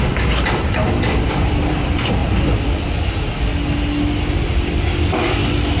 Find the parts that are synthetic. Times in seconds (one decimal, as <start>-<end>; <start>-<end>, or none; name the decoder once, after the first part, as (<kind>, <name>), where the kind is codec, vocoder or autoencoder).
0.0-2.2 (vocoder, BigVGAN v2)